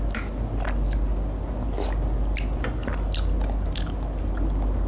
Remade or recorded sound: recorded